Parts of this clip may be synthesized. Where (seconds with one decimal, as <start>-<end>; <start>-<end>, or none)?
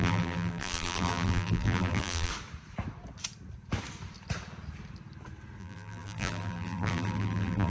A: 0.0-2.3; 5.6-7.7